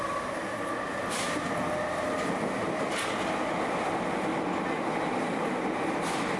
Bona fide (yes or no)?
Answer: yes